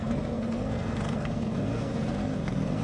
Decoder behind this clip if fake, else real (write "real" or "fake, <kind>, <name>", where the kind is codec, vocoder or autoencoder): fake, codec, SNAC